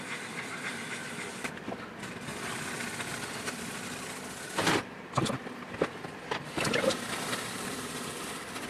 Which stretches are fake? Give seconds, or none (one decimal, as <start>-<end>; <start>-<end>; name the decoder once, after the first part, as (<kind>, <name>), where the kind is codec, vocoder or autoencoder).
0.0-2.3 (vocoder, BigVGAN v2); 4.8-8.7